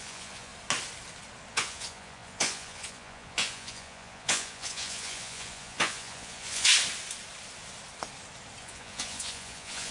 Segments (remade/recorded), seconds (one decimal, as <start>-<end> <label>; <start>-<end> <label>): 0.0-0.5 remade; 0.5-1.5 recorded; 1.5-6.7 remade; 6.7-8.6 recorded; 8.6-9.9 remade